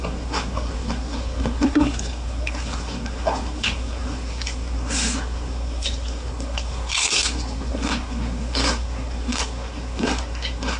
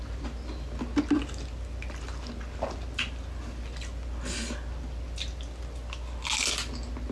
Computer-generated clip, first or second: first